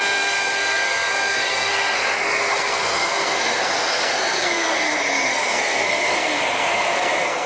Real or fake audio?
fake